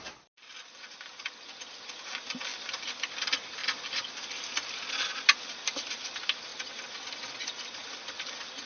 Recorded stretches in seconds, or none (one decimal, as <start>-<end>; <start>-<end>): 0.0-8.7